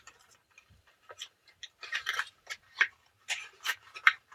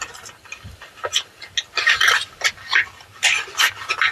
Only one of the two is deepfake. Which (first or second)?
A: first